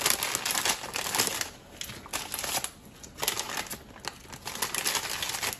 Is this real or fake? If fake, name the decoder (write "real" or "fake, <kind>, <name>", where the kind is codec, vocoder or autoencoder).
real